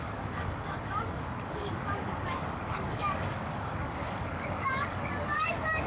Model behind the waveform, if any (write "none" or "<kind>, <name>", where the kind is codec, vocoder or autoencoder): codec, DAC